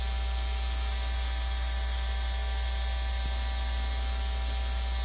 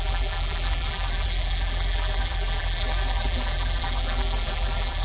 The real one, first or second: first